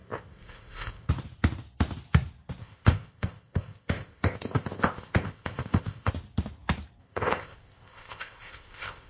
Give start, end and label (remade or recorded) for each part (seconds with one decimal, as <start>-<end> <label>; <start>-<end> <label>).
0.0-1.1 remade; 1.1-2.6 recorded; 2.6-6.1 remade; 6.1-7.0 recorded; 7.0-9.1 remade